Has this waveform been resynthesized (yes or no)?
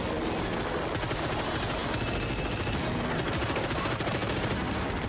no